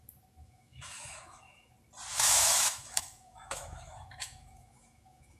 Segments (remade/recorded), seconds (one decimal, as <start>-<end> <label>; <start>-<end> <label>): 0.0-0.4 recorded; 0.4-1.7 remade; 1.7-2.1 recorded; 2.1-5.4 remade